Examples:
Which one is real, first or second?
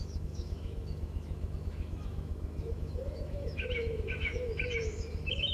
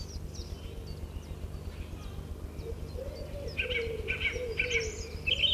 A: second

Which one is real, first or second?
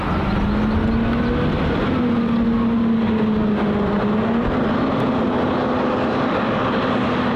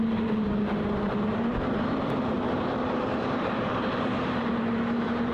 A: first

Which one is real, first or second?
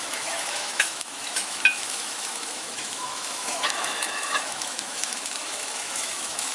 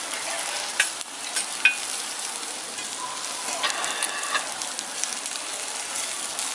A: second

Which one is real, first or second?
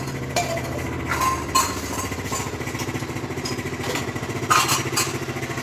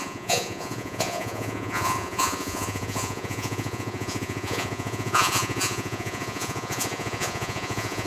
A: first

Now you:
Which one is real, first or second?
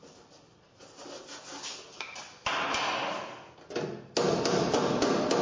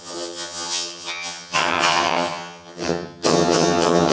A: first